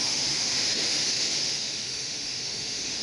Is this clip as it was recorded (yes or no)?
no